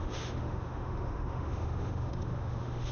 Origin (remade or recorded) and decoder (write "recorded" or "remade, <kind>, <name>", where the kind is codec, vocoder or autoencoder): remade, autoencoder, DAC-VAE